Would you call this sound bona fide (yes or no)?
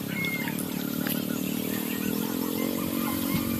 yes